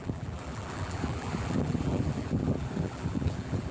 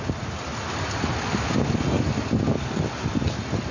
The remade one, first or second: first